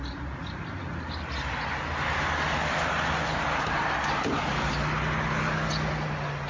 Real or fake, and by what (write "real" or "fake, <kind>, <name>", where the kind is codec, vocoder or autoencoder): real